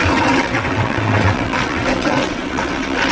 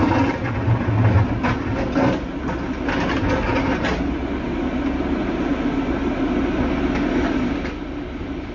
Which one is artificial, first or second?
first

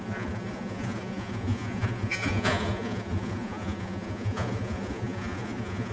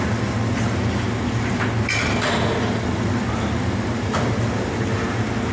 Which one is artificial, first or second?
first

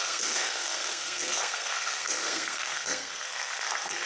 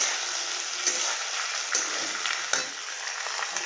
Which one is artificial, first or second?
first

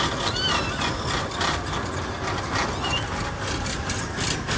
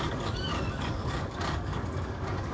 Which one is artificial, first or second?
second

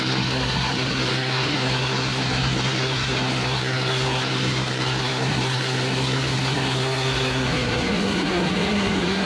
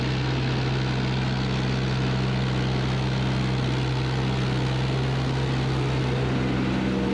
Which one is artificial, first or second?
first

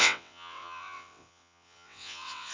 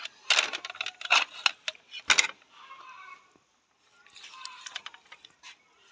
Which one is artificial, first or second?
first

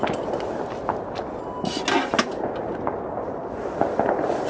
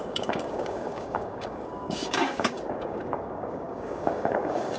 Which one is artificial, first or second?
second